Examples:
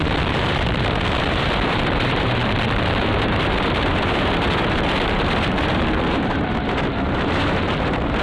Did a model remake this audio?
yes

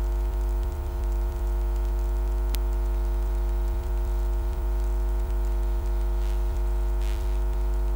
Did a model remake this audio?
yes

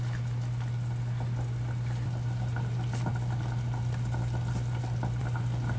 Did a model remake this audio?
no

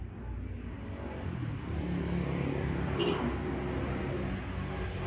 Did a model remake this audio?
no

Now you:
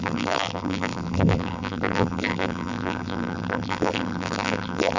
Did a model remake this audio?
yes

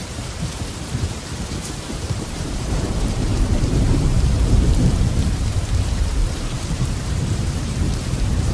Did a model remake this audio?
yes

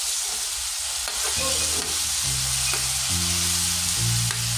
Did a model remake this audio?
no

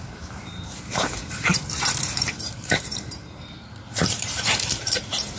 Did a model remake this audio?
yes